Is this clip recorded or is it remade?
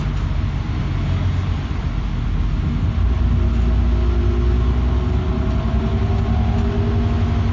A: recorded